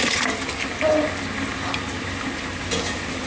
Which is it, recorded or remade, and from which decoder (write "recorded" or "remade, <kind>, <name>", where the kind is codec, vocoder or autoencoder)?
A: recorded